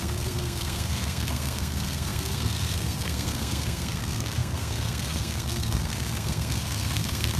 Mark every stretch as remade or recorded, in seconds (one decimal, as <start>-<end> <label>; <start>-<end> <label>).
0.0-7.4 remade